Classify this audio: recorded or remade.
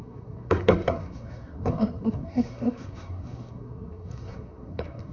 remade